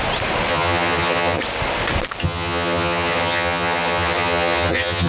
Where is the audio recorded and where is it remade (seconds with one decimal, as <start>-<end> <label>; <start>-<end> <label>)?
0.0-0.5 recorded; 0.5-1.4 remade; 1.4-2.2 recorded; 2.2-5.1 remade